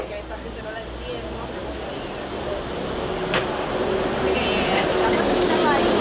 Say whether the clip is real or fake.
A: real